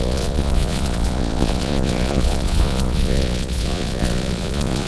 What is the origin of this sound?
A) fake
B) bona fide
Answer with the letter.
A